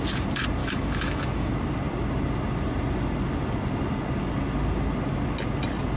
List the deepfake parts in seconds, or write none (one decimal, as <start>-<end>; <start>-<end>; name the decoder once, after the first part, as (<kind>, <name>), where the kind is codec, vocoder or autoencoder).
0.6-1.5 (autoencoder, DAC-VAE)